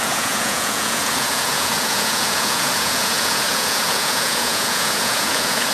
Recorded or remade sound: remade